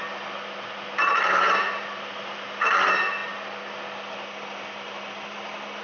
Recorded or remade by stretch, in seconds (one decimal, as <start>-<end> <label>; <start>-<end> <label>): 0.0-5.8 recorded